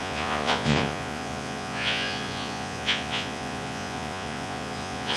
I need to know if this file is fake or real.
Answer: fake